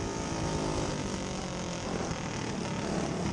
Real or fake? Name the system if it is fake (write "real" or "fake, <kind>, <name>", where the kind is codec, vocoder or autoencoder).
real